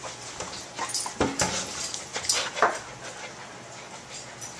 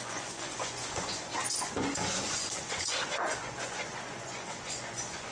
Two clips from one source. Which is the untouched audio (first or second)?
first